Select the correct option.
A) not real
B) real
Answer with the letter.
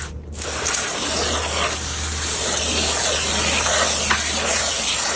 B